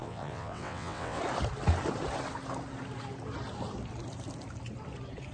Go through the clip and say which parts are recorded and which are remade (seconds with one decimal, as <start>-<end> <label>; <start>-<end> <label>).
0.0-1.2 remade; 1.2-5.3 recorded